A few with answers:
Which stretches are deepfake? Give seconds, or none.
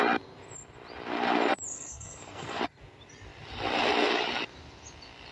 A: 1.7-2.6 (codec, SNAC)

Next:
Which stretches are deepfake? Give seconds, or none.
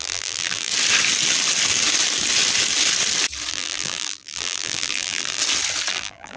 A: 0.0-0.7 (vocoder, BigVGAN v2); 3.5-5.4; 5.9-6.4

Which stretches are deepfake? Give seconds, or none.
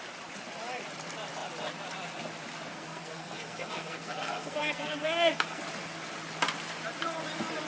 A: 2.7-5.6 (codec, SNAC)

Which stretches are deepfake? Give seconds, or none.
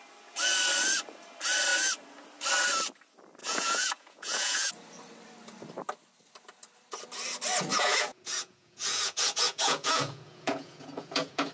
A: 3.4-4.7 (vocoder, Vocos); 7.7-11.5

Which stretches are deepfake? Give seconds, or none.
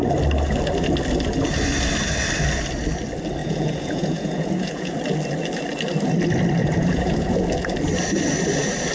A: 3.4-5.0 (vocoder, Vocos); 6.6-7.4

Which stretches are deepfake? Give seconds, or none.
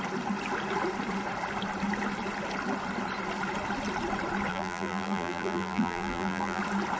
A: 4.5-6.6 (vocoder, BigVGAN v2)